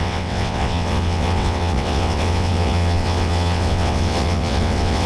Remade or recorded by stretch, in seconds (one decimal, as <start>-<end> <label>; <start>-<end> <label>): 0.0-5.1 remade